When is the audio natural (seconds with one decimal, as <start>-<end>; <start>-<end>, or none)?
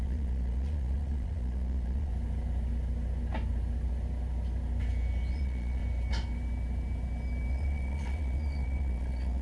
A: 2.1-5.3; 5.8-7.5